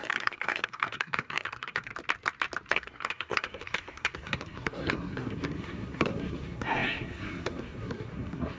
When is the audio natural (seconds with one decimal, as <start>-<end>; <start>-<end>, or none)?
1.9-2.7